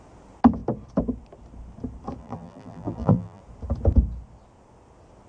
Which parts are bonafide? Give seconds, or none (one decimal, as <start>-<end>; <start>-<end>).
0.0-2.2; 3.4-5.3